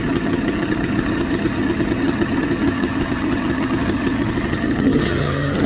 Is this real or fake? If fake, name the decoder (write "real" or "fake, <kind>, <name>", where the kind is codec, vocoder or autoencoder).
fake, vocoder, HiFi-GAN